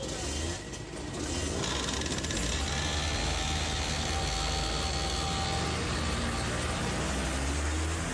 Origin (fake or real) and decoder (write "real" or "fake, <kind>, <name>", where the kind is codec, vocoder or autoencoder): real